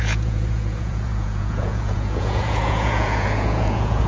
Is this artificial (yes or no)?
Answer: yes